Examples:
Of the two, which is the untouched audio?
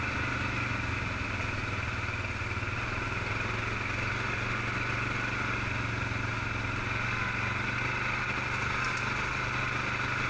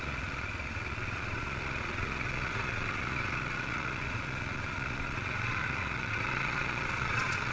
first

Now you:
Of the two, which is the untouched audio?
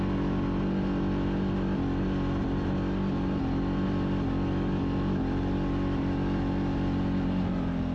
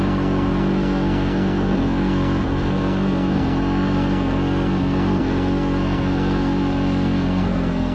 first